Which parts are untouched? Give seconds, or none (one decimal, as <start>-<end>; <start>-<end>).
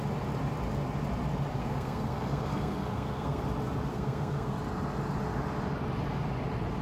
0.0-1.6; 3.4-3.9; 4.5-6.8